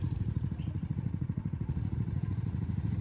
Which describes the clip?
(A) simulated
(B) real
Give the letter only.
A